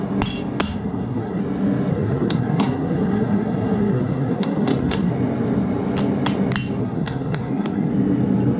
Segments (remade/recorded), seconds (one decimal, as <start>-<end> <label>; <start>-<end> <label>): 0.0-0.6 recorded; 0.6-1.4 remade; 1.4-1.9 recorded; 1.9-5.1 remade; 5.1-6.8 recorded; 6.8-7.9 remade; 7.9-8.6 recorded